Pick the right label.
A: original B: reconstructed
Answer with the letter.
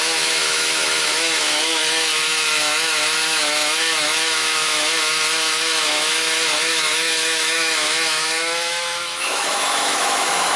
B